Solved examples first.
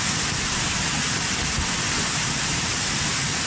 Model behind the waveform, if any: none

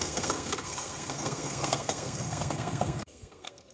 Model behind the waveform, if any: codec, SNAC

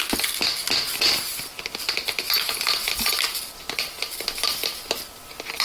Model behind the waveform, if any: none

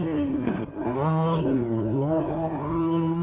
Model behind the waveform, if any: codec, SNAC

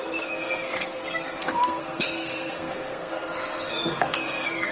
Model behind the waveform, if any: codec, SNAC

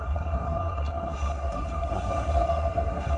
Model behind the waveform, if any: codec, SNAC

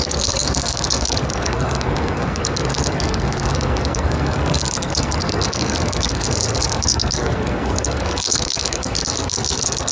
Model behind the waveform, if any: codec, SNAC